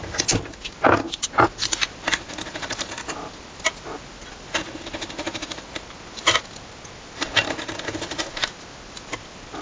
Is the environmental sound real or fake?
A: real